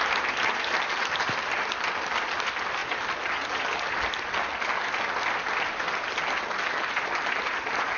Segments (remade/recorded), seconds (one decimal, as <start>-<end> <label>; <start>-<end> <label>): 0.0-8.0 recorded

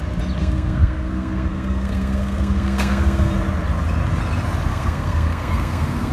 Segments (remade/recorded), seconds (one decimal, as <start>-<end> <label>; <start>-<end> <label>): 0.0-0.4 recorded; 0.4-3.3 remade; 3.3-4.7 recorded; 4.7-6.1 remade

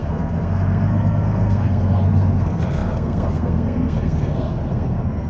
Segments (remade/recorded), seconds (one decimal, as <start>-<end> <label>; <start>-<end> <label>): 0.0-5.3 remade

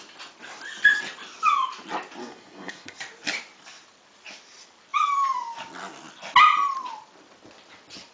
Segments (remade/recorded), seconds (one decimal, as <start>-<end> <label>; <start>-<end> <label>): 0.0-2.2 recorded; 2.2-3.0 remade; 3.0-8.1 recorded

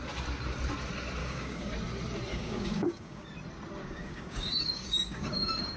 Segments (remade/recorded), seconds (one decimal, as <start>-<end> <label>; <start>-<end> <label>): 0.0-1.2 recorded; 1.2-1.7 remade; 1.7-2.3 recorded; 2.3-3.3 remade; 3.3-3.8 recorded; 3.8-5.8 remade

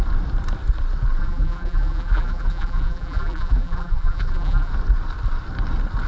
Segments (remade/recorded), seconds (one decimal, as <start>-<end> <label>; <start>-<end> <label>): 0.0-1.2 recorded; 1.2-4.7 remade; 4.7-6.1 recorded

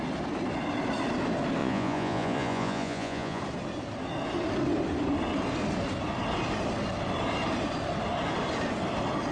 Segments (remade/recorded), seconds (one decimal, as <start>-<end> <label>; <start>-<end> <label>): 0.0-1.6 recorded; 1.6-3.4 remade; 3.4-9.3 recorded

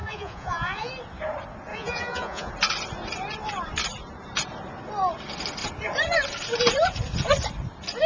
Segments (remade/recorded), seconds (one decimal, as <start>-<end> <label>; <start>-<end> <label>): 0.0-0.9 remade; 0.9-1.7 recorded; 1.7-2.5 remade; 2.5-8.1 recorded